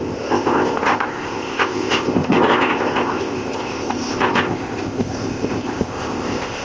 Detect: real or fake fake